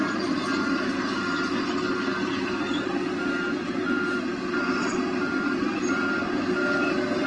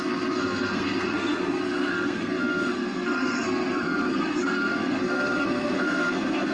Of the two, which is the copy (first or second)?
second